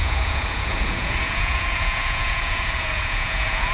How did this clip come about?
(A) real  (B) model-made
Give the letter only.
B